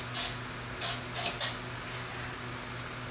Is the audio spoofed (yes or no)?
no